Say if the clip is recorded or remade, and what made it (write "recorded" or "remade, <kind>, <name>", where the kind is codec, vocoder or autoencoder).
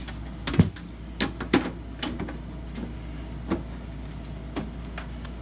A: recorded